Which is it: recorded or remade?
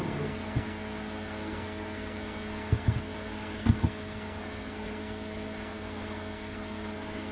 remade